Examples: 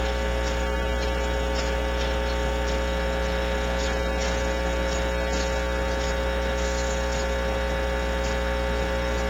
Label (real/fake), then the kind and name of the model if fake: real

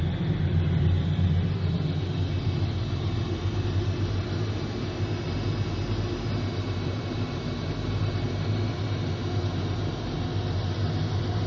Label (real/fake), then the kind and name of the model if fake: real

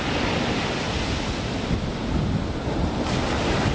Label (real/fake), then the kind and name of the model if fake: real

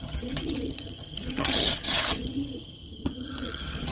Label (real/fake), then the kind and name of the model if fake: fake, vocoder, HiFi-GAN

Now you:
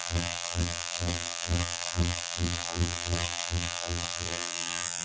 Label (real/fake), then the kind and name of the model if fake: fake, vocoder, BigVGAN v2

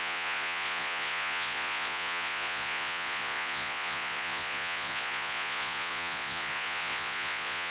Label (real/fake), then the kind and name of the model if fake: fake, vocoder, Vocos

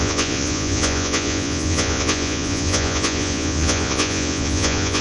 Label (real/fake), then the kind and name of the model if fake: fake, vocoder, Vocos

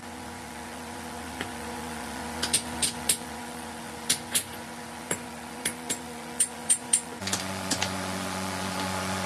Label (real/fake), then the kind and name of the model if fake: fake, vocoder, Vocos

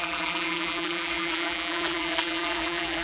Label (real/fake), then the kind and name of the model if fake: fake, vocoder, BigVGAN v2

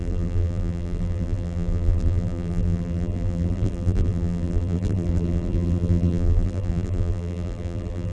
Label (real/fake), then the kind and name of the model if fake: fake, vocoder, BigVGAN v2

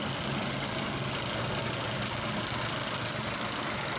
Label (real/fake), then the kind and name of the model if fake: real